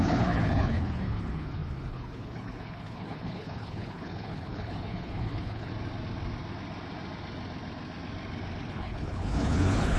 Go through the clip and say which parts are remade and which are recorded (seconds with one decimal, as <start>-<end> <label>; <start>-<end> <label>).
0.0-5.7 remade; 5.7-8.7 recorded; 8.7-10.0 remade